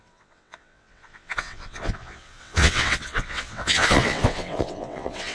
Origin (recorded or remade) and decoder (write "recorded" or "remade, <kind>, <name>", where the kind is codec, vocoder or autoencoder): remade, vocoder, WaveNeXt